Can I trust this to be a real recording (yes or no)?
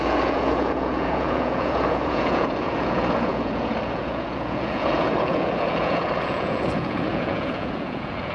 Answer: no